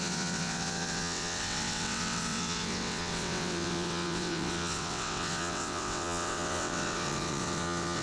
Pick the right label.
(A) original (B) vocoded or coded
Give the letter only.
B